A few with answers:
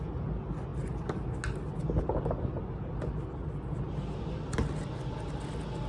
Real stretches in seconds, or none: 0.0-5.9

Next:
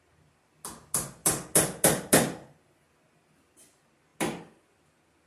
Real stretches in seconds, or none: 0.0-5.3

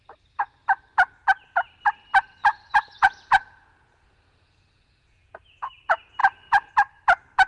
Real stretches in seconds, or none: 0.0-2.5; 5.7-6.2; 6.7-7.5

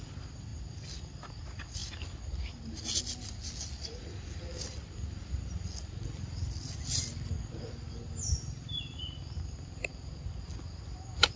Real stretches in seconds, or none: 0.0-11.4

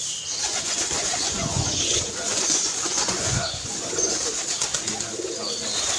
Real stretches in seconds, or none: 0.0-0.5; 4.1-6.0

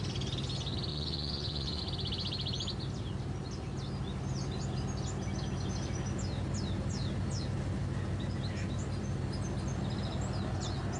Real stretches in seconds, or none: 0.0-0.9; 1.8-11.0